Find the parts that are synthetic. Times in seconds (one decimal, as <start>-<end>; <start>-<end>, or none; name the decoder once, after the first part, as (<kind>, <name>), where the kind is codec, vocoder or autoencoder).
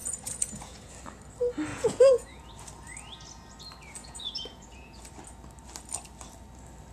0.0-0.9 (vocoder, Vocos); 1.7-2.5; 4.0-5.0